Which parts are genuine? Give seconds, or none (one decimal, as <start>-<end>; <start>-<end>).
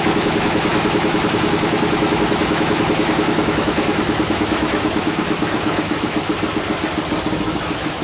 6.3-7.3